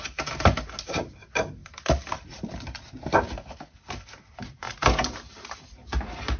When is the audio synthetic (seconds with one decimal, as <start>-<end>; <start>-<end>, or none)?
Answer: 1.6-3.0